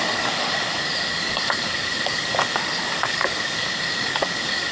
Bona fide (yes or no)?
no